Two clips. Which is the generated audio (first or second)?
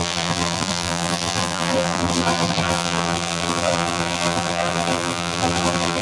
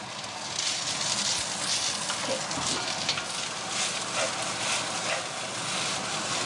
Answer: first